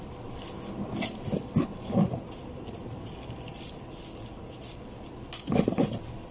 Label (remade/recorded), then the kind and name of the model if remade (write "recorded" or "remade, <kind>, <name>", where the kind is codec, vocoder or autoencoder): recorded